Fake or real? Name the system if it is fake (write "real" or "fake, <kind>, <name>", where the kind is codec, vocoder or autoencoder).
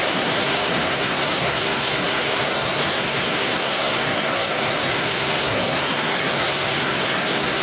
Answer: fake, codec, SNAC